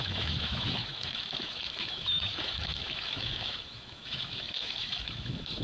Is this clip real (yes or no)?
no